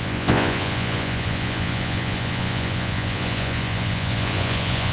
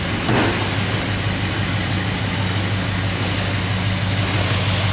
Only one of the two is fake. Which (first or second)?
first